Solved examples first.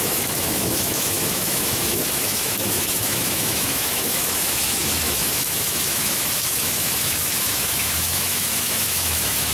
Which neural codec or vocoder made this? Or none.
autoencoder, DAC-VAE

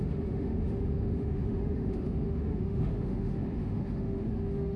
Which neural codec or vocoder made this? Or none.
autoencoder, DAC-VAE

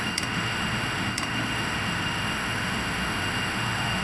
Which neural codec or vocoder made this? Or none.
autoencoder, DAC-VAE